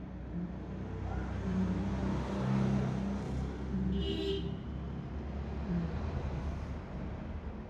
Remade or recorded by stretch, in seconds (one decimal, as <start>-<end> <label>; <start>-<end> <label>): 0.0-7.7 recorded

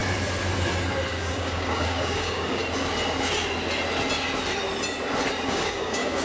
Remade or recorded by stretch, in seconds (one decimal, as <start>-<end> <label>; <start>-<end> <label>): 0.0-1.1 recorded; 1.1-2.6 remade; 2.6-5.5 recorded; 5.5-6.2 remade

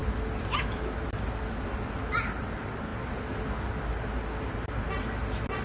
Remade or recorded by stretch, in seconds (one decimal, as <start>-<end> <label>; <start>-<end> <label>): 0.0-5.6 recorded